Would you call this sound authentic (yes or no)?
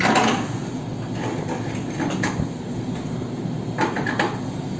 yes